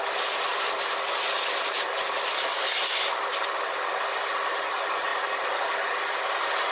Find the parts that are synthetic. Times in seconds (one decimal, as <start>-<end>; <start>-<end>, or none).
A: none